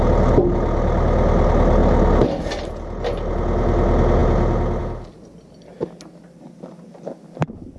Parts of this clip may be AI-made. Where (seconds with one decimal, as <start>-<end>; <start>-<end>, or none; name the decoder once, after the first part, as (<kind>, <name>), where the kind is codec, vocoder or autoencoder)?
none